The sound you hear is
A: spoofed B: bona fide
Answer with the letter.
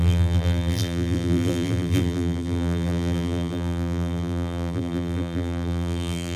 A